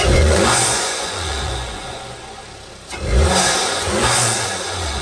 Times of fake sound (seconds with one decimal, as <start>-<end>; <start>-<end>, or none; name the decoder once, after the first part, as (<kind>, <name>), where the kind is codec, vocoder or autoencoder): 0.0-2.4 (vocoder, Vocos); 3.6-5.0